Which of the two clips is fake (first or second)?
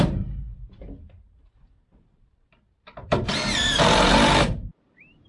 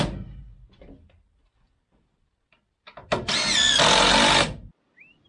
first